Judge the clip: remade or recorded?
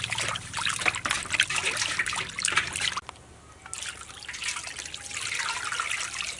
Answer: recorded